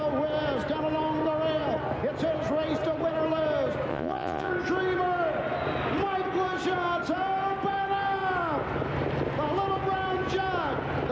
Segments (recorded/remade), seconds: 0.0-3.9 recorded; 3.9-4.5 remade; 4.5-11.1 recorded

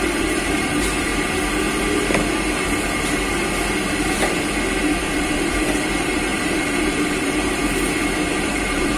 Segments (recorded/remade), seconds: 0.0-1.1 remade; 1.1-5.0 recorded; 5.0-7.6 remade; 7.6-8.3 recorded; 8.3-9.0 remade

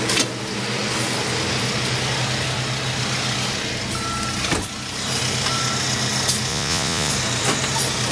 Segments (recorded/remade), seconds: 0.0-6.5 recorded; 6.5-7.1 remade; 7.1-8.1 recorded

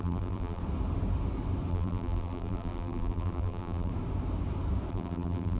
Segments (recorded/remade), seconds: 0.0-0.6 remade; 0.6-1.7 recorded; 1.7-3.9 remade; 3.9-4.9 recorded; 4.9-5.6 remade

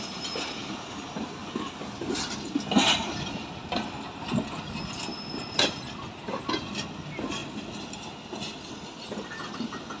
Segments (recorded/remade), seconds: 0.0-10.0 recorded

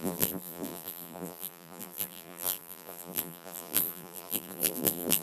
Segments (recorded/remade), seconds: 0.0-5.2 remade

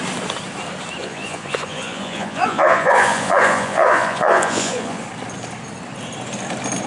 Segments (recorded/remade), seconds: 0.0-1.0 recorded; 1.0-5.0 remade; 5.0-6.9 recorded

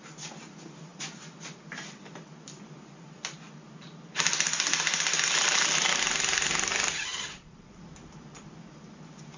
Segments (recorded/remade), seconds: 0.0-7.1 recorded; 7.1-7.8 remade; 7.8-9.4 recorded